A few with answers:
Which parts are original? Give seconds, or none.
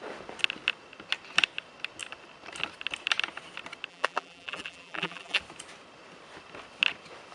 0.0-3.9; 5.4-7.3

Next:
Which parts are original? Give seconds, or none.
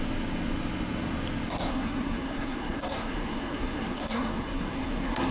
0.0-1.7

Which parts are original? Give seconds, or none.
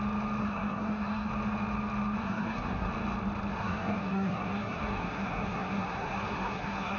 0.0-0.4; 1.3-2.2; 2.9-3.5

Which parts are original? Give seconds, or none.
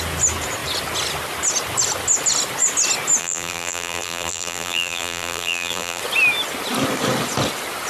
0.0-3.2; 6.0-7.9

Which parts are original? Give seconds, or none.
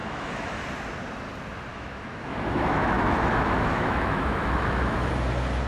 0.6-1.7; 5.1-5.7